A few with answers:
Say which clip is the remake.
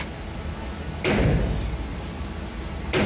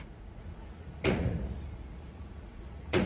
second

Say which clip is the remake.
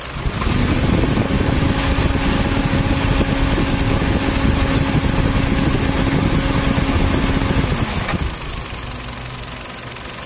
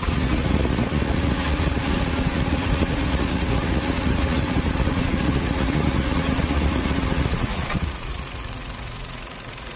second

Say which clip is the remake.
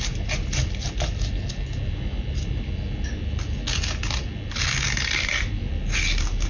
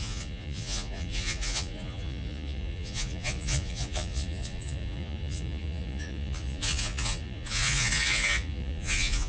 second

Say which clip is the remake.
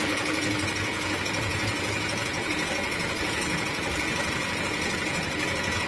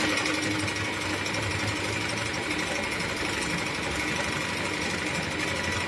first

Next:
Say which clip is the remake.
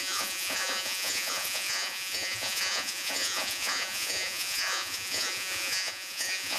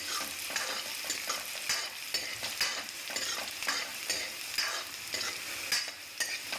first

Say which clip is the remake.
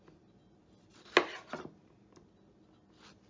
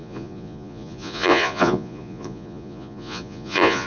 second